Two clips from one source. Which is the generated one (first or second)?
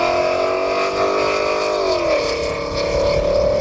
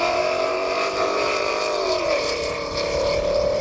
second